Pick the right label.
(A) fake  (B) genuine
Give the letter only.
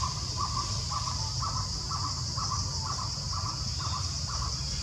B